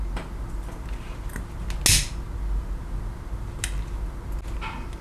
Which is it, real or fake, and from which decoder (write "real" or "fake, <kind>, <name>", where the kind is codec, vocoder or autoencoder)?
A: real